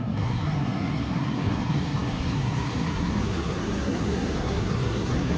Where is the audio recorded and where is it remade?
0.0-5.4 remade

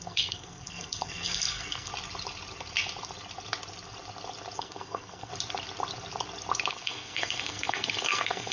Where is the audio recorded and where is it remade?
0.0-1.9 remade; 1.9-4.6 recorded; 4.6-5.3 remade; 5.3-6.7 recorded; 6.7-8.5 remade

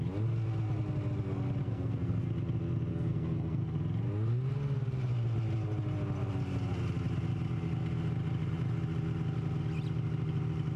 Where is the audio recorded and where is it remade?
0.0-1.6 recorded; 1.6-2.3 remade; 2.3-2.9 recorded; 2.9-3.7 remade; 3.7-10.8 recorded

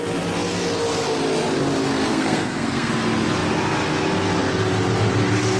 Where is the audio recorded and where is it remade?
0.0-2.1 recorded; 2.1-2.9 remade; 2.9-5.6 recorded